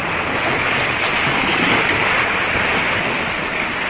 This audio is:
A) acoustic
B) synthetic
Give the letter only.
A